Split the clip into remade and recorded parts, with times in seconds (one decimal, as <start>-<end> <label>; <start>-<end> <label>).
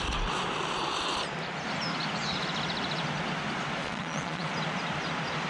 0.0-3.8 recorded; 3.8-4.5 remade; 4.5-5.5 recorded